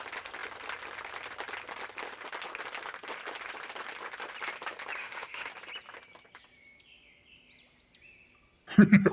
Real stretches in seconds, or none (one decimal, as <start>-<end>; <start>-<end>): 0.0-5.0; 5.5-9.1